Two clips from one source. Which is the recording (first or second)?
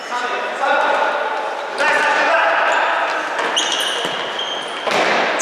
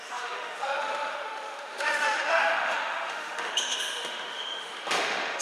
first